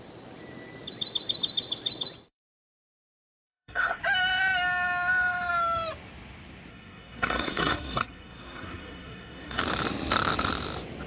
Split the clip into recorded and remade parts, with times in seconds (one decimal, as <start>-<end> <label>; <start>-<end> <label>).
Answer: 0.0-2.3 recorded; 2.3-4.0 remade; 4.0-6.7 recorded; 6.7-9.6 remade; 9.6-11.1 recorded